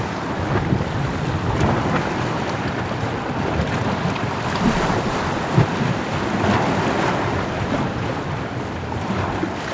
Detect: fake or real real